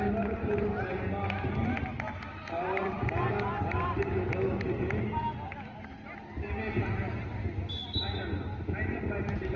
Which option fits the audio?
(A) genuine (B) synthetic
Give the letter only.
A